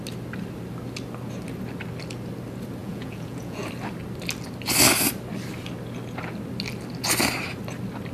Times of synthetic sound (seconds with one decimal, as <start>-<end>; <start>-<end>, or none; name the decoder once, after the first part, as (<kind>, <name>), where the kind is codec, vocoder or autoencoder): 2.8-3.7 (vocoder, Vocos)